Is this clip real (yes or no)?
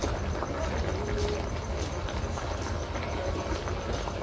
yes